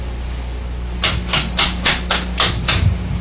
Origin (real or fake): real